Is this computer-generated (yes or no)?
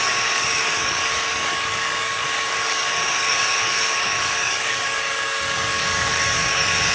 yes